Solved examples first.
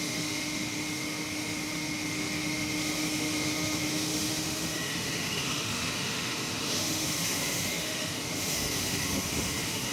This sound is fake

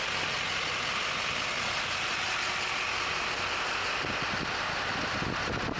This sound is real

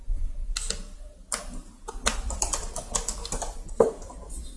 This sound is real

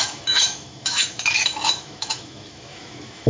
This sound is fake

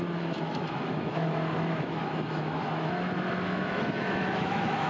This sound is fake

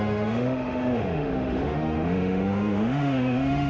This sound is fake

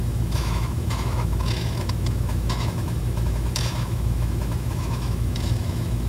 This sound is fake